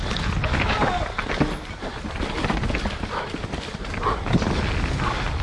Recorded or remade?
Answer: recorded